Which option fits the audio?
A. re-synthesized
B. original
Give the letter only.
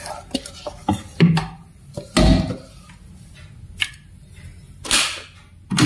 B